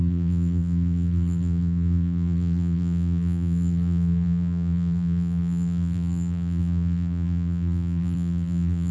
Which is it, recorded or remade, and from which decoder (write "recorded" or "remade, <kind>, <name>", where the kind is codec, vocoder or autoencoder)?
remade, vocoder, BigVGAN v2